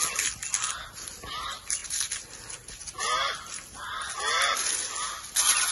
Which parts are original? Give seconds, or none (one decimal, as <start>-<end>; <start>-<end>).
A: 0.0-5.7